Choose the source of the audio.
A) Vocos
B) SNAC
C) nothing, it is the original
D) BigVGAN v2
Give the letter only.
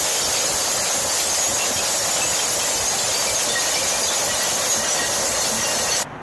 C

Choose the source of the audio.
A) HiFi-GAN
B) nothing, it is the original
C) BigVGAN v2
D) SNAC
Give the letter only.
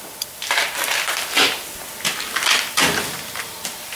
C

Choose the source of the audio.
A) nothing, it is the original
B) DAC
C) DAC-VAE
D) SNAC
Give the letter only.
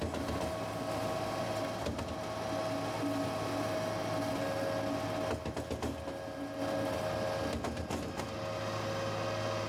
A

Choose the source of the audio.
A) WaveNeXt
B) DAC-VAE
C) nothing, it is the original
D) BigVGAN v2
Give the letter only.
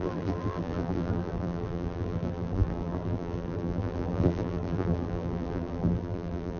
D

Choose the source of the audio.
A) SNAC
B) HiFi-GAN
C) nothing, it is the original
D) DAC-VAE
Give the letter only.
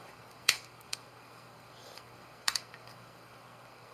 A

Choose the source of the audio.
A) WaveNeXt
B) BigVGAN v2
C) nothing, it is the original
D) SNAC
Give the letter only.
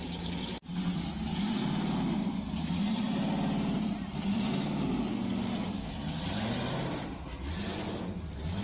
C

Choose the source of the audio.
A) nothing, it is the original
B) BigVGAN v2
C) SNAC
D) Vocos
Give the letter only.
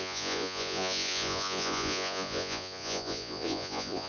D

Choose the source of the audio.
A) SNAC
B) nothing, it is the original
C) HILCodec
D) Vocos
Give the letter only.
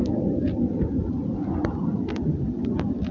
B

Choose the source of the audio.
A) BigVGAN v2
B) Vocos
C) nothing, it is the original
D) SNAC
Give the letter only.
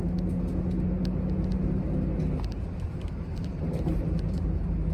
C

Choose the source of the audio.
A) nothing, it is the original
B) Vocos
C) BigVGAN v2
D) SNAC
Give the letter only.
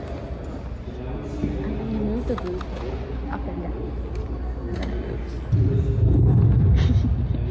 A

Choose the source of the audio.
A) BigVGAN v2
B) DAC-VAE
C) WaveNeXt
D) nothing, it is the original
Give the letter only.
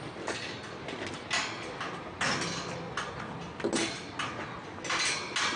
D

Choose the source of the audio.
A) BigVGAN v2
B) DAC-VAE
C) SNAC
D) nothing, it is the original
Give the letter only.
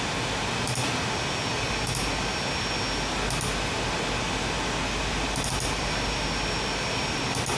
D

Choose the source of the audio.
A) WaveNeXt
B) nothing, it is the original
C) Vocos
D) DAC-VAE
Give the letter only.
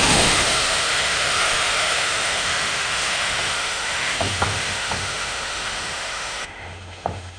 D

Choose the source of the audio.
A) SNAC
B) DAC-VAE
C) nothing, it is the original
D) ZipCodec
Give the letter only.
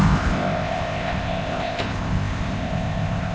D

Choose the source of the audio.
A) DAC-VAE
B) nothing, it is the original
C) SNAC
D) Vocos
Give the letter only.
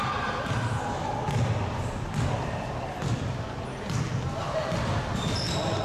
B